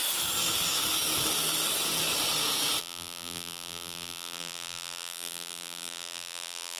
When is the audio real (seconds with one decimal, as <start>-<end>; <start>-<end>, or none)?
0.0-2.8